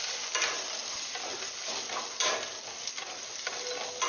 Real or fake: real